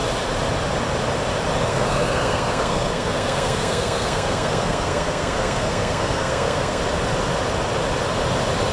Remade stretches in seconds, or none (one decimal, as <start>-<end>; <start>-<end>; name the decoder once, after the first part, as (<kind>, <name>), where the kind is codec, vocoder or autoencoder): 1.7-6.8 (codec, SNAC)